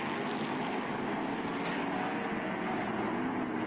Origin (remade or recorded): recorded